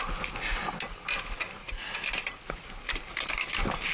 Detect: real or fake real